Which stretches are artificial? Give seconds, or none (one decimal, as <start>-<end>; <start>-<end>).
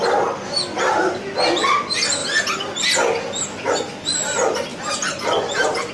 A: none